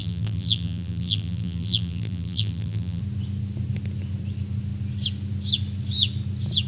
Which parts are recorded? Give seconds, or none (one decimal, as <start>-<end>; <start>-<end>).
3.0-6.7